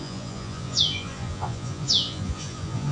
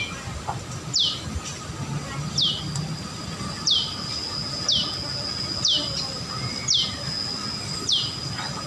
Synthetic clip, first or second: first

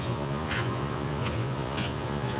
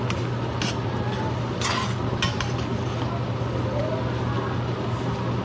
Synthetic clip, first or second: first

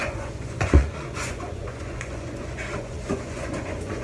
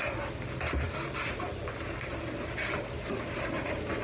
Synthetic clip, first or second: first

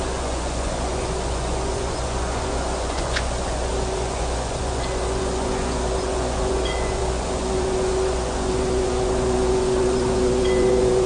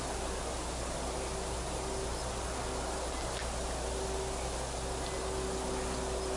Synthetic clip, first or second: first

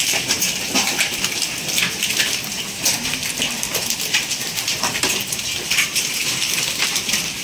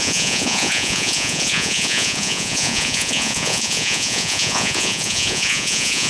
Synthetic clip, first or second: second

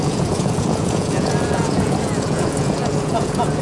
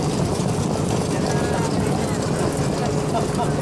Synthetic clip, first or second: first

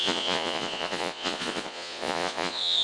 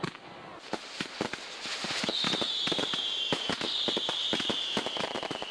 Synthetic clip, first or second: first